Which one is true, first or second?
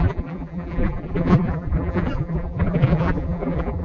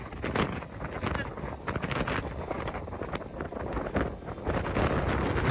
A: second